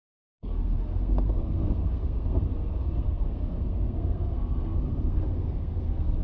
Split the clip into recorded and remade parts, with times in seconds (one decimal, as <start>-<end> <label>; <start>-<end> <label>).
0.0-6.2 remade